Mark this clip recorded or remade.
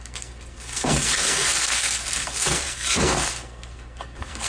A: remade